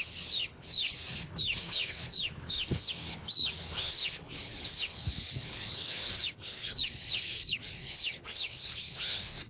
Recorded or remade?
remade